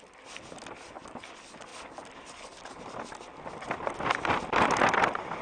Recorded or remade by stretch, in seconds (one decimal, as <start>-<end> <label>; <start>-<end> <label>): 0.0-5.4 recorded